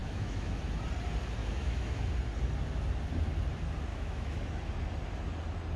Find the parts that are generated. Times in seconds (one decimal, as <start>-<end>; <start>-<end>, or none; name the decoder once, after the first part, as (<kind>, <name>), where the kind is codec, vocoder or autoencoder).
0.0-0.6 (autoencoder, DAC-VAE); 1.4-2.0; 3.9-4.5